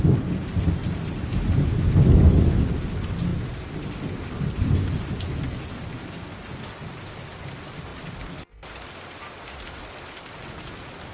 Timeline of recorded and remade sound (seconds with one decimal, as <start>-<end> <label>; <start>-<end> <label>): 0.0-0.8 recorded; 0.8-2.4 remade; 2.4-11.1 recorded